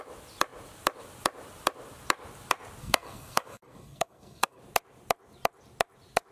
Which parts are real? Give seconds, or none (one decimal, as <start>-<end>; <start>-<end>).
0.0-2.8; 4.6-6.3